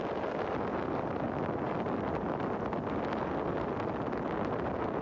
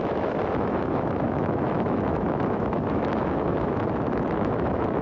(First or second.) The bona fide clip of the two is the first